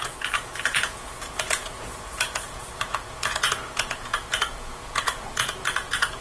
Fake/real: fake